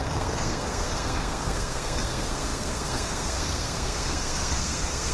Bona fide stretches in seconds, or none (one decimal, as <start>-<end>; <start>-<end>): none